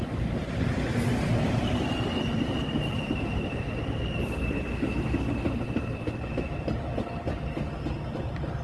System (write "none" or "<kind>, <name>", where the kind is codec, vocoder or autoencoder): none